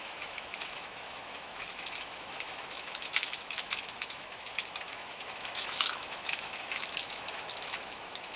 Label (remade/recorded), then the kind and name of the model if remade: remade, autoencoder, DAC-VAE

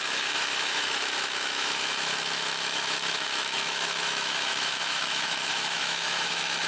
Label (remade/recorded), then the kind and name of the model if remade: remade, autoencoder, DAC-VAE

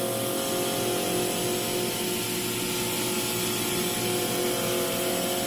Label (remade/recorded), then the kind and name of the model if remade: recorded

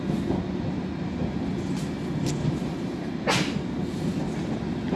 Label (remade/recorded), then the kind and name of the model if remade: recorded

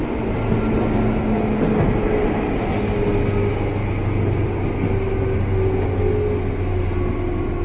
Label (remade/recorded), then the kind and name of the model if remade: recorded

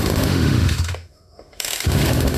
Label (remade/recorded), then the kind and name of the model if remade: remade, autoencoder, DAC-VAE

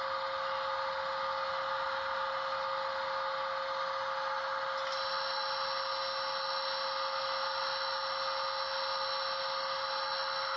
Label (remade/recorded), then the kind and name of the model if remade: recorded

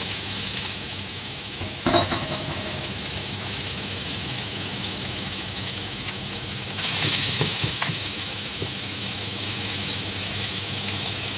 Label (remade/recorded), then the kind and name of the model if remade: remade, autoencoder, DAC-VAE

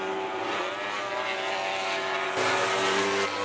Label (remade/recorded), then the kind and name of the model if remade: recorded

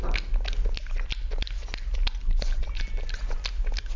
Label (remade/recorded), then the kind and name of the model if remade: recorded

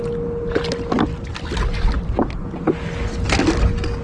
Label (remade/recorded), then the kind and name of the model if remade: recorded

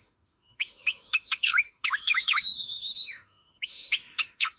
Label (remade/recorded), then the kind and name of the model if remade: remade, autoencoder, DAC-VAE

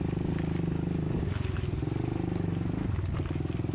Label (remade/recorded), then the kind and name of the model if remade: recorded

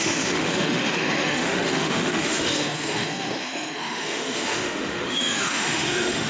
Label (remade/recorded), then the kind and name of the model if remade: remade, autoencoder, DAC-VAE